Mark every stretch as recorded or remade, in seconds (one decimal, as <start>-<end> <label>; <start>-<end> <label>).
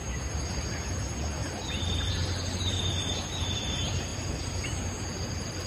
0.0-5.7 recorded